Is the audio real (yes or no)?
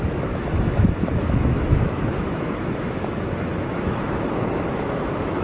no